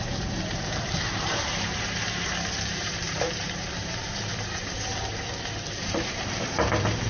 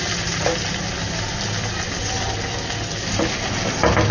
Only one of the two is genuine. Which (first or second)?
second